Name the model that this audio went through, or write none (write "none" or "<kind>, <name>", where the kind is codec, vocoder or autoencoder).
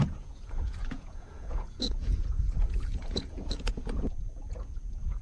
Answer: vocoder, Vocos